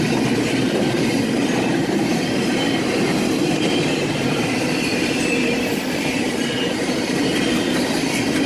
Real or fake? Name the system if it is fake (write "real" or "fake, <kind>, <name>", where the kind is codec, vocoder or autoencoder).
fake, vocoder, BigVGAN v2